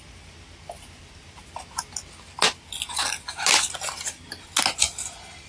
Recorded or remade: recorded